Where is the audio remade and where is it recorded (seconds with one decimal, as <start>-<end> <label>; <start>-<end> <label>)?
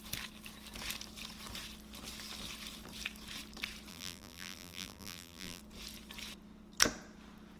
0.0-3.9 recorded; 3.9-5.6 remade; 5.6-7.6 recorded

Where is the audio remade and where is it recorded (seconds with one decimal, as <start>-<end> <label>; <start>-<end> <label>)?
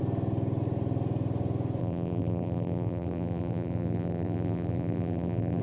0.0-1.8 recorded; 1.8-5.6 remade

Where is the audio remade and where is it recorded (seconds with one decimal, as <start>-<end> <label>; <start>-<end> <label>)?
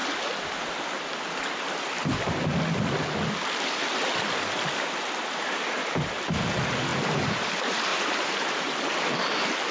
0.0-6.9 recorded; 6.9-7.5 remade; 7.5-7.9 recorded; 7.9-8.8 remade; 8.8-9.7 recorded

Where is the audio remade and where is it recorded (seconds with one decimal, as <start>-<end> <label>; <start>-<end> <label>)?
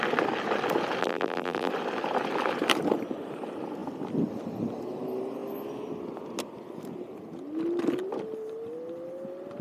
0.0-1.0 recorded; 1.0-1.7 remade; 1.7-9.6 recorded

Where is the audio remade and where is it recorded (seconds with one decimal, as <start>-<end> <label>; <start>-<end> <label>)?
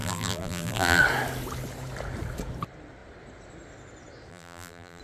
0.0-1.0 remade; 1.0-4.3 recorded; 4.3-5.0 remade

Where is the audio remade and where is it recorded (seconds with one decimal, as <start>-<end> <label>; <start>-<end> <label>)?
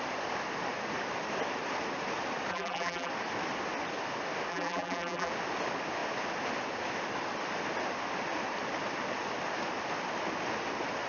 0.0-2.5 recorded; 2.5-3.1 remade; 3.1-4.5 recorded; 4.5-5.3 remade; 5.3-11.1 recorded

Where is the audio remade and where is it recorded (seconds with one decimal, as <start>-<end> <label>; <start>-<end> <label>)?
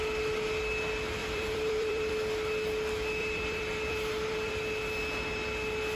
0.0-1.2 recorded; 1.2-2.1 remade; 2.1-3.2 recorded; 3.2-4.5 remade; 4.5-6.0 recorded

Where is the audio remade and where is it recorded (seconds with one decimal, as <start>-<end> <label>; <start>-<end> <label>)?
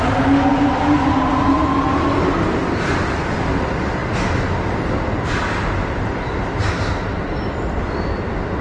0.0-8.6 recorded